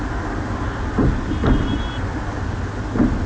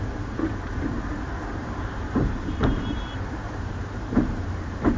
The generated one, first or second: second